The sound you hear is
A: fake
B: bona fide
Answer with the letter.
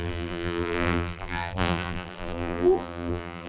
A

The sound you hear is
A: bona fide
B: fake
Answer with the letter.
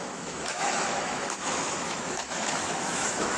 B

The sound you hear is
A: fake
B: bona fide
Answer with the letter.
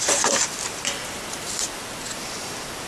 A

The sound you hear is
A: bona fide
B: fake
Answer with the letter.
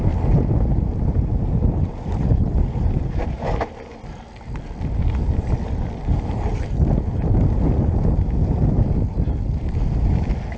A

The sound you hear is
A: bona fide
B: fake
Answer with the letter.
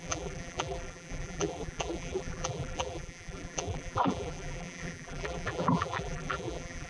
B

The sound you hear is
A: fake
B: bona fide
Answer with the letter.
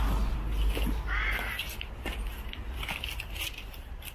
B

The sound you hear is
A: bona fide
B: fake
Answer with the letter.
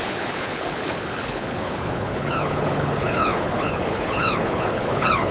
B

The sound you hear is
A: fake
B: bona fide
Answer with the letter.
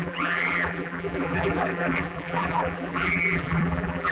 A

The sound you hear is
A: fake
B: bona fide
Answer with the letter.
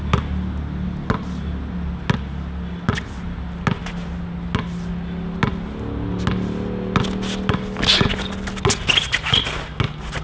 B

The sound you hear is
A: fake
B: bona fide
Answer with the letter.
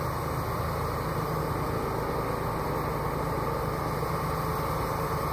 B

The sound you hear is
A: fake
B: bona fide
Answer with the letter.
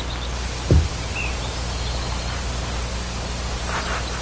B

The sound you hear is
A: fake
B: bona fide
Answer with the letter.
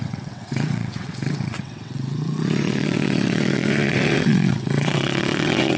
A